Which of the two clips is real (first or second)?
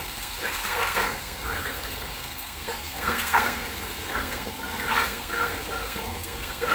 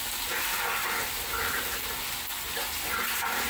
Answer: second